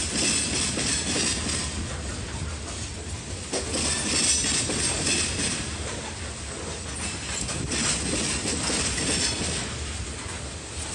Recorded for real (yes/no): yes